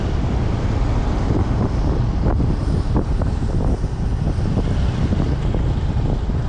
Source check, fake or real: fake